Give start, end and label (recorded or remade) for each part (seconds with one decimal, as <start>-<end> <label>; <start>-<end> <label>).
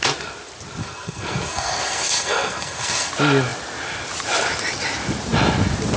0.0-0.8 recorded; 0.8-3.1 remade; 3.1-6.0 recorded